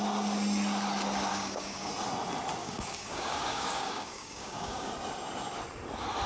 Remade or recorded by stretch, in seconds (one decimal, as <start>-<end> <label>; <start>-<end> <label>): 0.0-1.3 recorded; 1.3-1.9 remade; 1.9-2.6 recorded; 2.6-4.9 remade; 4.9-6.3 recorded